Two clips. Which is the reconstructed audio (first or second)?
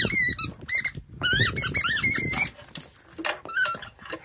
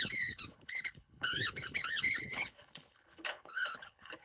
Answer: second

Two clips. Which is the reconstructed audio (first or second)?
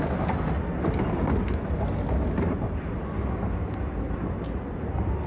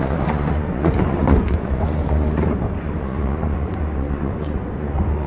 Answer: second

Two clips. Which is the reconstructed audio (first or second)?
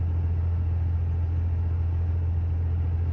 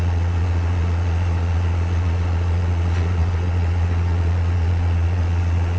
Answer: second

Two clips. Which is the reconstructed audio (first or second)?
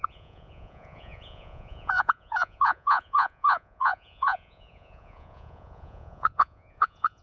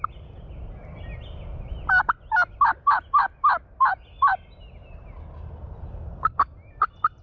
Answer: first